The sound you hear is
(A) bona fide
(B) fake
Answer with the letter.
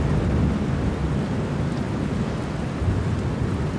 A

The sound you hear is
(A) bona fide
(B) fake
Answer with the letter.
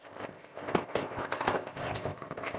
B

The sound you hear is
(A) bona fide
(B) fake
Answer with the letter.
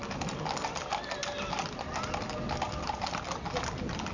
A